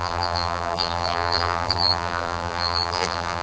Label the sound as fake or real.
fake